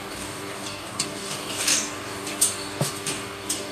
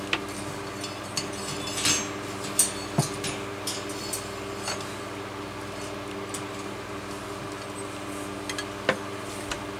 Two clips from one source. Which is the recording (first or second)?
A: second